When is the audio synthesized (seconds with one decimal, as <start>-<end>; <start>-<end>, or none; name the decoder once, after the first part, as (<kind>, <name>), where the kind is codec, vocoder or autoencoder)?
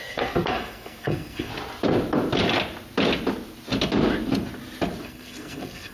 0.0-1.5 (codec, SNAC); 5.0-5.9